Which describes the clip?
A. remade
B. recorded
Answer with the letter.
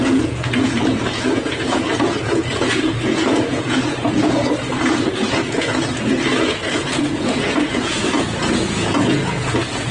A